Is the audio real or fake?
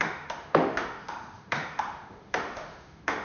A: fake